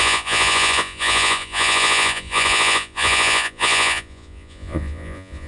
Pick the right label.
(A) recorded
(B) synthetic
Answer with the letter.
B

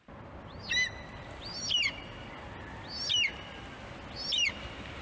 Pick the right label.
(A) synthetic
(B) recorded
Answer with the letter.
B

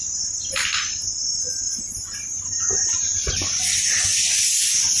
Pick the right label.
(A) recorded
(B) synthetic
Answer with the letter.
A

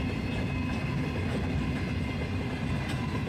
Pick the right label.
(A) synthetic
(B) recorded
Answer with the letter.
B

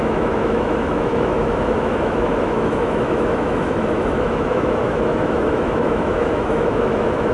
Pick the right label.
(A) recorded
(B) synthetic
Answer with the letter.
B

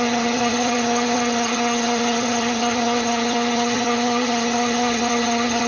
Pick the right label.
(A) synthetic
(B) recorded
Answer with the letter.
A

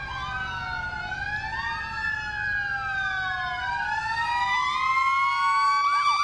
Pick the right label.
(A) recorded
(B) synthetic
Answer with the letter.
A